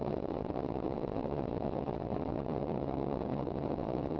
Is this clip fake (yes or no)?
yes